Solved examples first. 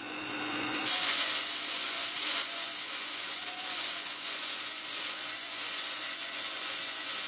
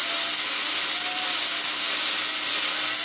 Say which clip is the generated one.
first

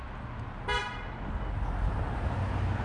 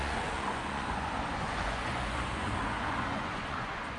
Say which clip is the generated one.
second